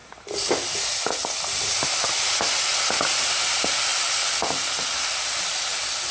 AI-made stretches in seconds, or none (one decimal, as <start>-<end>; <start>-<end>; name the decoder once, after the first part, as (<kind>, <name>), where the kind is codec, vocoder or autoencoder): none